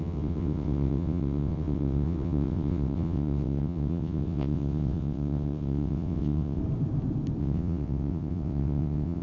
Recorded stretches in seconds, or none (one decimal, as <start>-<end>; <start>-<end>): 6.6-7.4